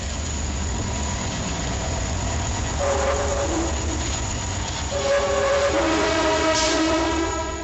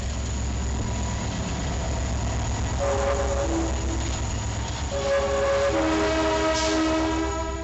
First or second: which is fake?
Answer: first